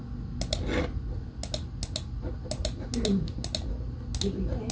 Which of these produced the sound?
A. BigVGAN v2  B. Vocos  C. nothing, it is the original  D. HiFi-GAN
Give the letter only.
C